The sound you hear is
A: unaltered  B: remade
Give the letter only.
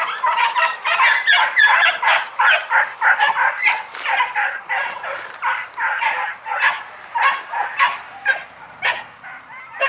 A